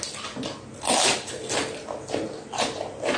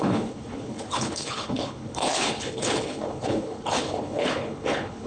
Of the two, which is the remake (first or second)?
second